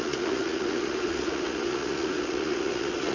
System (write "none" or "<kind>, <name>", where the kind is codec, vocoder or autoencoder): vocoder, Vocos